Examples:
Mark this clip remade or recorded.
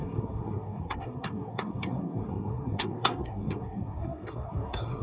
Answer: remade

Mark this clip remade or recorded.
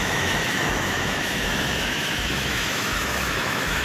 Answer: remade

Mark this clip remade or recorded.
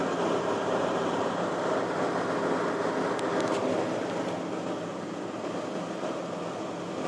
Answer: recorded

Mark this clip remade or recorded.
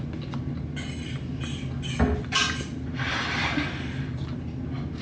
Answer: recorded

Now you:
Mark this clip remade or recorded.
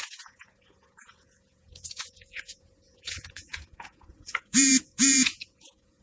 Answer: remade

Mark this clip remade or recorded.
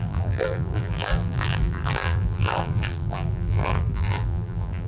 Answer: remade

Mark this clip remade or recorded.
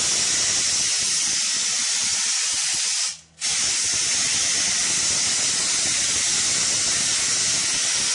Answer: recorded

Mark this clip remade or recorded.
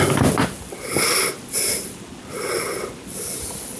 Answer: recorded